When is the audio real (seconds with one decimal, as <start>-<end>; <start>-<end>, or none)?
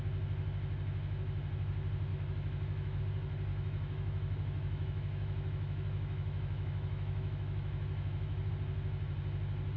0.0-2.1; 3.0-3.5; 8.5-9.8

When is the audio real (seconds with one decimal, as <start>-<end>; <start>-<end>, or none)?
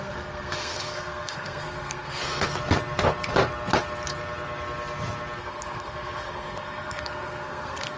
2.2-5.4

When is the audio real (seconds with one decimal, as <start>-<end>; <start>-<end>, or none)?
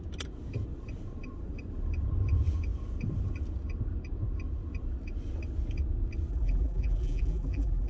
0.0-6.3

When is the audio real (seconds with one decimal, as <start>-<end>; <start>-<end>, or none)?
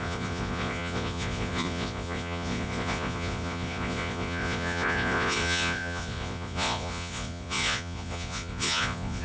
none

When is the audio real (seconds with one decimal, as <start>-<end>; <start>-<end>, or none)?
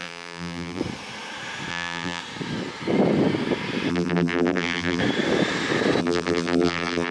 0.8-1.7; 2.2-3.9; 5.0-6.0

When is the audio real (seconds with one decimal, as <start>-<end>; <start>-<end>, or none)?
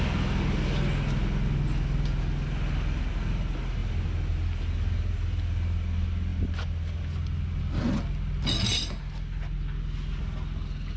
0.0-11.0